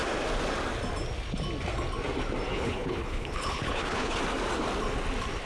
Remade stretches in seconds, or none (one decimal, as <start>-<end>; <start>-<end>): 2.5-4.2